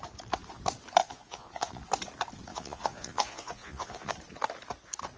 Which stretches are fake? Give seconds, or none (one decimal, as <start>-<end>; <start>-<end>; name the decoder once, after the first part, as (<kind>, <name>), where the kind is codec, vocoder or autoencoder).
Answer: 1.0-1.8 (vocoder, Vocos); 2.5-4.1